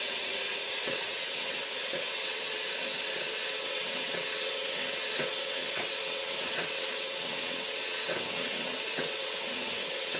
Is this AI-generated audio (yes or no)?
yes